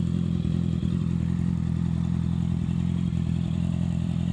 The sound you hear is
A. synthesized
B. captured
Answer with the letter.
A